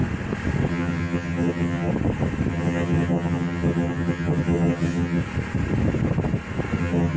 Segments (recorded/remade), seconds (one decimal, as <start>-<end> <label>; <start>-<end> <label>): 0.0-0.7 recorded; 0.7-1.9 remade; 1.9-2.5 recorded; 2.5-5.2 remade; 5.2-6.8 recorded; 6.8-7.2 remade